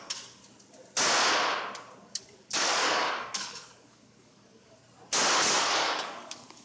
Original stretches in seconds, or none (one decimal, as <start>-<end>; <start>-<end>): 0.4-2.0; 4.8-5.6